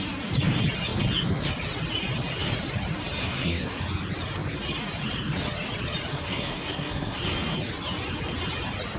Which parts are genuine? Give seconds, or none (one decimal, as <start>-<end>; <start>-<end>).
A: 0.0-3.2; 3.8-6.1; 7.2-9.0